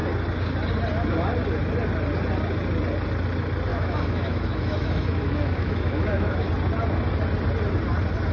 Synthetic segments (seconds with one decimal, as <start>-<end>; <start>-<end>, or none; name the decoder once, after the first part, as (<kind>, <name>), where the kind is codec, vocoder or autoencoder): 3.7-6.5 (autoencoder, DAC-VAE)